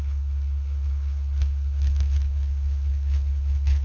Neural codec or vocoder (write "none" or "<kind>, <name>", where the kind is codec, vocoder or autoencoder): codec, HILCodec